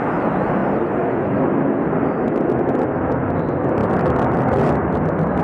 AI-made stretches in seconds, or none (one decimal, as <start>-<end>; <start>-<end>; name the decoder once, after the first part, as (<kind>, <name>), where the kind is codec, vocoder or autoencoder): none